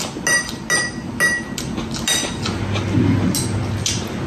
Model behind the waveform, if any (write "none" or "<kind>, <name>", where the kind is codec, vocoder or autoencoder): none